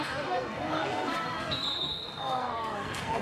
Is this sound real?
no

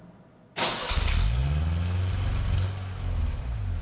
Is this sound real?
yes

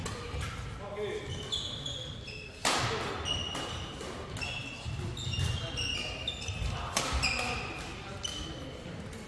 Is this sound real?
yes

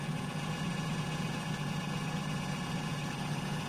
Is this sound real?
no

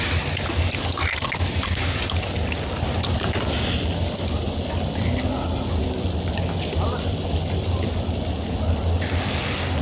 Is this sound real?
yes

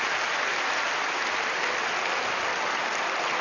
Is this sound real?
yes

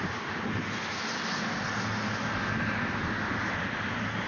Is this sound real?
yes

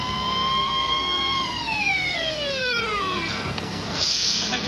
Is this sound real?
no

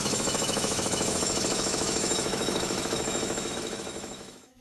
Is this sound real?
no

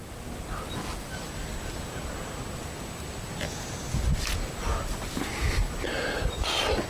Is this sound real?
yes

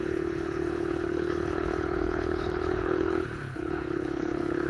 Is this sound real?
no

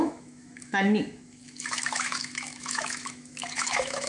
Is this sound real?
no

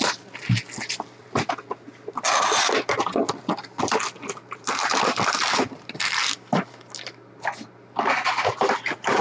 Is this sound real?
yes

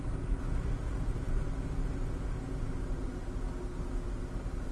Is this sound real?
yes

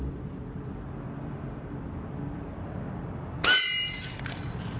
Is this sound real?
no